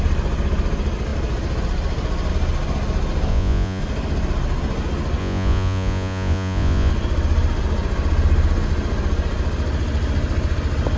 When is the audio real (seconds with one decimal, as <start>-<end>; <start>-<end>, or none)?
0.0-3.3; 3.8-5.2; 6.9-11.0

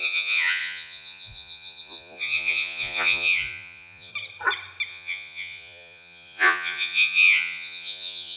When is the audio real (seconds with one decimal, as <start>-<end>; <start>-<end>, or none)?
4.1-4.9